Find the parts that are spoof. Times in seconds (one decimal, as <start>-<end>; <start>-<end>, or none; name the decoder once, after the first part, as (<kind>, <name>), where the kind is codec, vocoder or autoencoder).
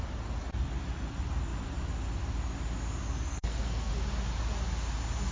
3.3-3.9 (codec, SNAC)